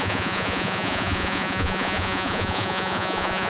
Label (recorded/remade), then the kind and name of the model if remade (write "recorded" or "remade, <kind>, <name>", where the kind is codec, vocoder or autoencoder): remade, vocoder, Vocos